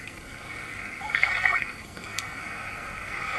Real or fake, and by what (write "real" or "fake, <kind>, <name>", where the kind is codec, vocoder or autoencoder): fake, codec, SNAC